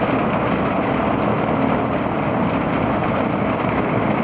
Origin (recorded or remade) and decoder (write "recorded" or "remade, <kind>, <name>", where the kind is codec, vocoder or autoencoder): recorded